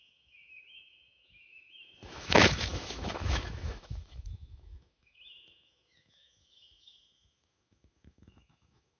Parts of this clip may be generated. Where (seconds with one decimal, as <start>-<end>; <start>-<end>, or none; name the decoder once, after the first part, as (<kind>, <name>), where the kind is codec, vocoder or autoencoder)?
0.0-9.0 (autoencoder, DAC-VAE)